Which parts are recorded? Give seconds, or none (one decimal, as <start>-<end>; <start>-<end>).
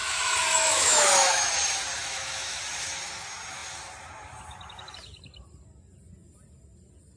1.5-2.0; 2.6-7.2